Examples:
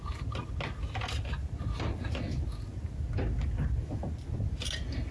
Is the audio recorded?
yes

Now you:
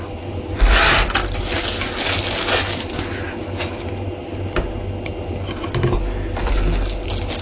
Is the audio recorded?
yes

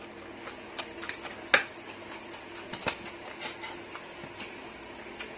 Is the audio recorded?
yes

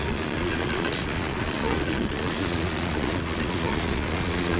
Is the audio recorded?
no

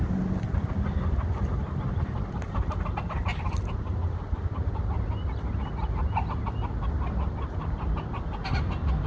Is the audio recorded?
yes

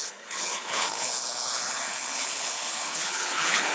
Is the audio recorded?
no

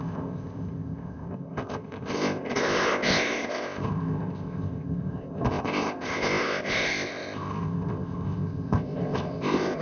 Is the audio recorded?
no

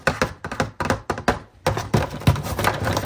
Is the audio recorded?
yes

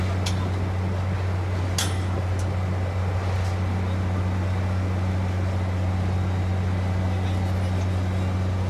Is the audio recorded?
yes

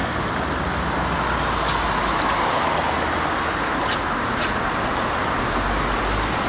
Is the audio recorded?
yes